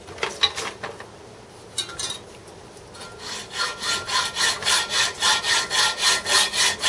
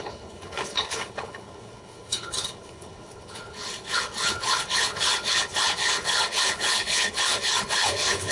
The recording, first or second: first